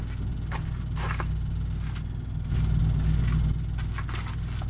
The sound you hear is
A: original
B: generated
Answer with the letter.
A